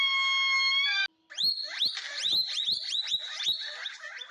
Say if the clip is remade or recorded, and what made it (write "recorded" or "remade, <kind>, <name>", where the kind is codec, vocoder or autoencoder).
recorded